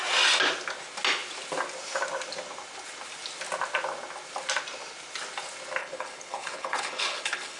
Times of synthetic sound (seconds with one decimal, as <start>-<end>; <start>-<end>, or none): 5.8-7.6